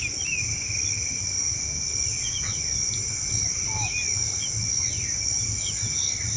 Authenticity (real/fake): real